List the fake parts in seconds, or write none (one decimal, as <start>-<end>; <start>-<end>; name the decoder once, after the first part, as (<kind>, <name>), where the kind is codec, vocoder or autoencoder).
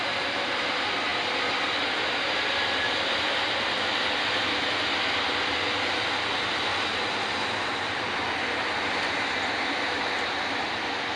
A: none